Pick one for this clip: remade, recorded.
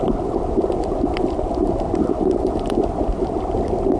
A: recorded